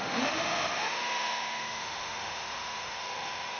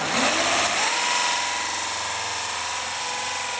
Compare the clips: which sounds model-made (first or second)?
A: first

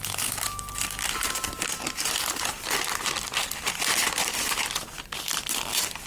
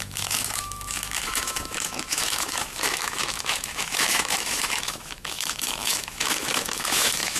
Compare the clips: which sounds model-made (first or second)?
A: second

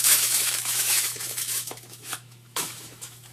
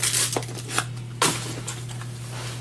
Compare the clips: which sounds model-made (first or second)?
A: first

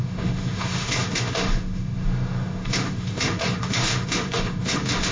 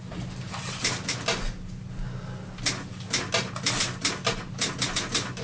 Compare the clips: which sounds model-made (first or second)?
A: first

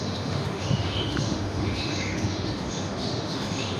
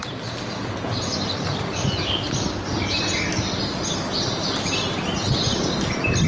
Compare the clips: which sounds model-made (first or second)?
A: first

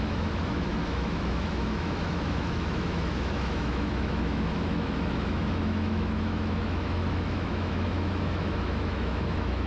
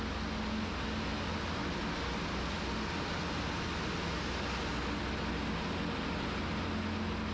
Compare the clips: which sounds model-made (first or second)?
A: first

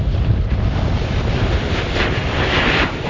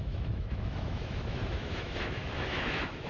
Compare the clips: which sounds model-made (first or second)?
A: second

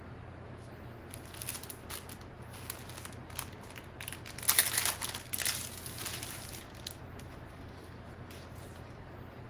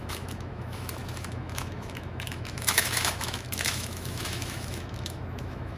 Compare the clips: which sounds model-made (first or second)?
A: second